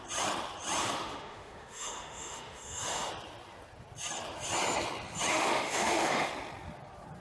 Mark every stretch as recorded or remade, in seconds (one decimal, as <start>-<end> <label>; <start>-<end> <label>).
0.0-0.8 recorded; 0.8-3.1 remade; 3.1-5.3 recorded; 5.3-6.3 remade; 6.3-7.2 recorded